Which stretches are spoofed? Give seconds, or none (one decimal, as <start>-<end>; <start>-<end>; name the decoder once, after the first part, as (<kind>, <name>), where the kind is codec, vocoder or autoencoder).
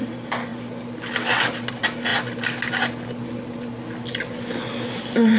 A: none